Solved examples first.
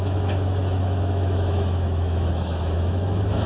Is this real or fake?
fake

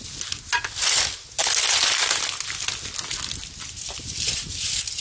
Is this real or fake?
real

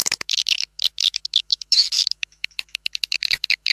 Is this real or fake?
fake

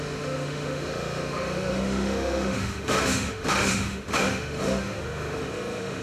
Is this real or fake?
fake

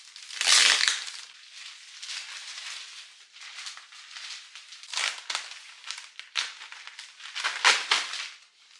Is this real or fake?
real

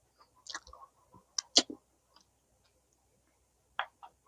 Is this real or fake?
real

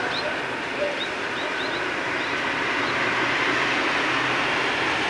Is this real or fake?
real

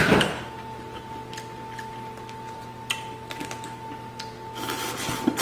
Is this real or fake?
real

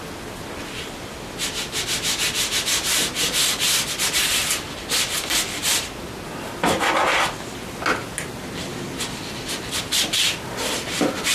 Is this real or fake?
real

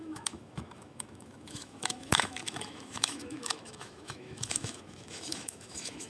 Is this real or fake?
fake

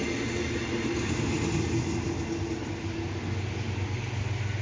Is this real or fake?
real